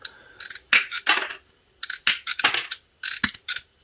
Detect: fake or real real